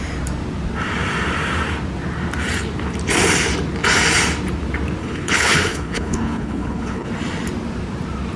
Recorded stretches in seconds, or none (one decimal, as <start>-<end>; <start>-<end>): 0.0-5.0; 7.1-8.4